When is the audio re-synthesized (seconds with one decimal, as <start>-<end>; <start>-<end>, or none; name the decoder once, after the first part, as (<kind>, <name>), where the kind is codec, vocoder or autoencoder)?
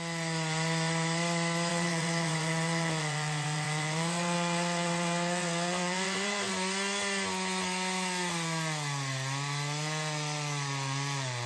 1.7-6.5 (vocoder, WaveNeXt)